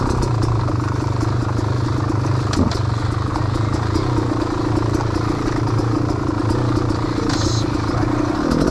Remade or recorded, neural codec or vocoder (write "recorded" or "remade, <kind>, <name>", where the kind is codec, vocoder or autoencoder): recorded